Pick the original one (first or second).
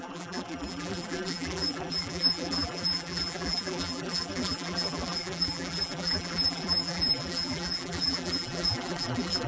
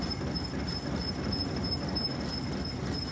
second